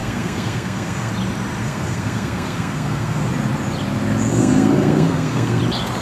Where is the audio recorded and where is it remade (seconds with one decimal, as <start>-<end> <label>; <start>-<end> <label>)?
0.0-1.1 remade; 1.1-1.6 recorded; 1.6-3.3 remade; 3.3-4.3 recorded; 4.3-5.6 remade; 5.6-6.0 recorded